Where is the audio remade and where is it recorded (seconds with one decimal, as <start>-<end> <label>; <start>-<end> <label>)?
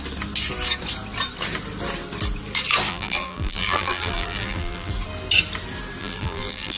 0.0-2.9 recorded; 2.9-4.9 remade; 4.9-6.0 recorded; 6.0-6.8 remade